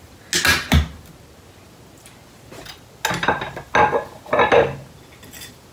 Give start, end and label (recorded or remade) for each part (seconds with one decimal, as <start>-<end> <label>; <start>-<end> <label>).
0.0-5.7 recorded